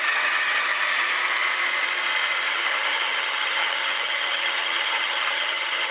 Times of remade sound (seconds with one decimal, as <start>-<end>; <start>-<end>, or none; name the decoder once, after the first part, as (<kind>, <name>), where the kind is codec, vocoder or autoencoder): 0.0-0.7 (vocoder, HiFi-GAN); 2.5-5.9